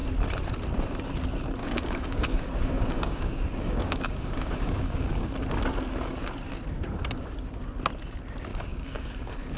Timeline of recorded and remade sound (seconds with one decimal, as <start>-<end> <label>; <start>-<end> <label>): 0.0-1.6 recorded; 1.6-5.3 remade; 5.3-8.5 recorded; 8.5-9.6 remade